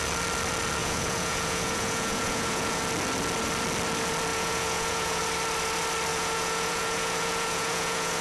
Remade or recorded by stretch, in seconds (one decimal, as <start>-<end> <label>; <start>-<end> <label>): 0.0-0.8 recorded; 0.8-2.8 remade; 2.8-4.3 recorded; 4.3-5.2 remade; 5.2-6.1 recorded; 6.1-8.2 remade